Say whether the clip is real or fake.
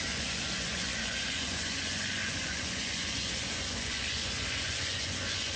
fake